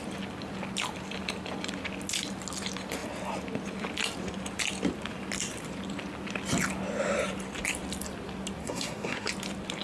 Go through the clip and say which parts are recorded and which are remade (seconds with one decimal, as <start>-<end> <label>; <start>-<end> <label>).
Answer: 0.0-8.6 recorded; 8.6-9.3 remade; 9.3-9.8 recorded